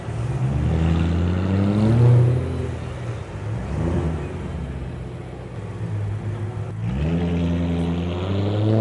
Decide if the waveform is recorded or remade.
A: recorded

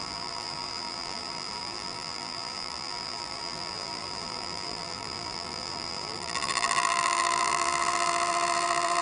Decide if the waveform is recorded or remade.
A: remade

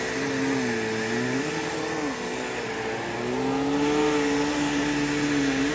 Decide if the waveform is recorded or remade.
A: recorded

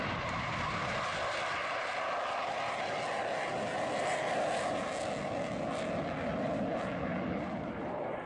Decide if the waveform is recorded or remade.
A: recorded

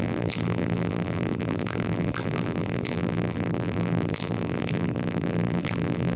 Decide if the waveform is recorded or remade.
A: remade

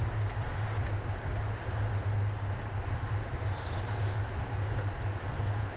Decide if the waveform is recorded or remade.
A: recorded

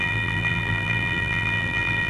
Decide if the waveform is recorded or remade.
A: remade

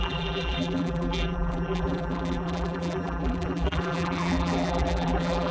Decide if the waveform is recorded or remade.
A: remade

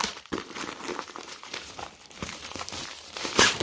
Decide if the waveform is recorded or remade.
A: remade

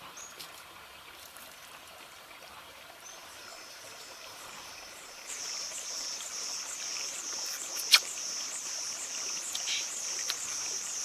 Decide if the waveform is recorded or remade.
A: remade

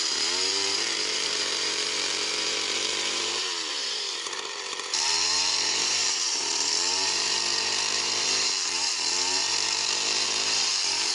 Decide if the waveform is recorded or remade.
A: remade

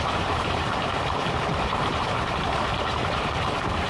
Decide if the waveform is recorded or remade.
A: remade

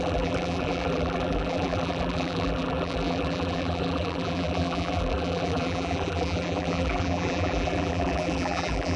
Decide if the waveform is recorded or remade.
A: remade